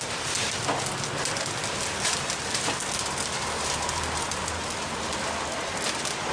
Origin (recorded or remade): recorded